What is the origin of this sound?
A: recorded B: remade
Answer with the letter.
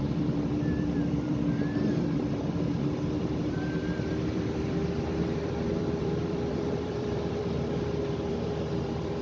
B